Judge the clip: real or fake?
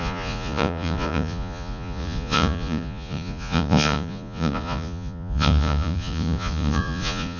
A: fake